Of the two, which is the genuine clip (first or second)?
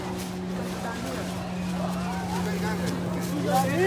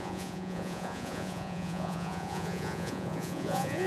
first